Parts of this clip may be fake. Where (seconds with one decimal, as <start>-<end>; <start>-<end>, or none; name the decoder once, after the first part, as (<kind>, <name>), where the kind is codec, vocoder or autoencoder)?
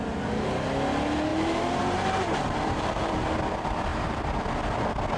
1.3-3.1 (vocoder, BigVGAN v2); 3.9-4.4